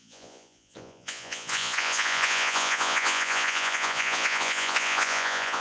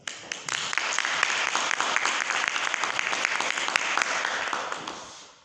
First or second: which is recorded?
second